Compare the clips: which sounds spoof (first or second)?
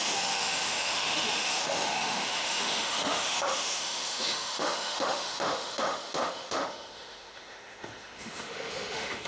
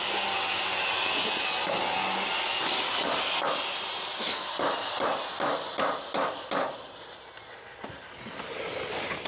first